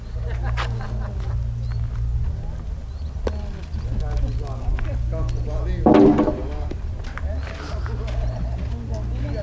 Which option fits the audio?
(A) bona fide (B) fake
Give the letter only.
A